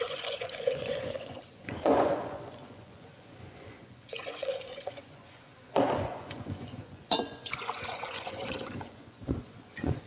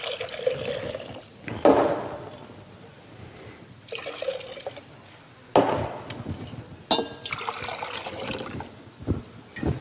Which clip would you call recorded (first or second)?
second